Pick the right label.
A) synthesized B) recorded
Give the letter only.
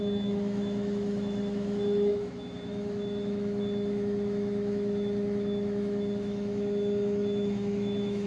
A